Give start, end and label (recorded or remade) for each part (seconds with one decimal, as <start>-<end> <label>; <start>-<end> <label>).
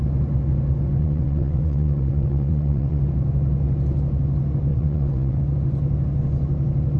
0.0-1.0 recorded; 1.0-3.0 remade; 3.0-4.7 recorded; 4.7-5.4 remade; 5.4-7.0 recorded